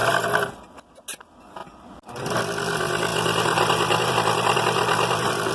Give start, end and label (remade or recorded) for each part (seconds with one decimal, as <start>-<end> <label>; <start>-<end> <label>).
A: 0.0-5.5 recorded